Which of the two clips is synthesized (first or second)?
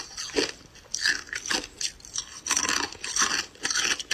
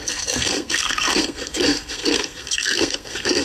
second